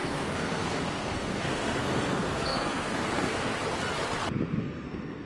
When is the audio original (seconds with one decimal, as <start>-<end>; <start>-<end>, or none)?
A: 3.5-4.6